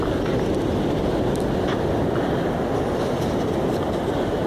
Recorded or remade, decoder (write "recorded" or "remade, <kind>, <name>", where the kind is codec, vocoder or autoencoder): recorded